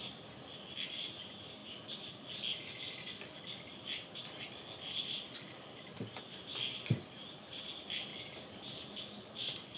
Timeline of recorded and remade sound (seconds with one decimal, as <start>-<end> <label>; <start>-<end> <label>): 0.0-9.8 recorded